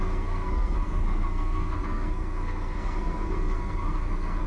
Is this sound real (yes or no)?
no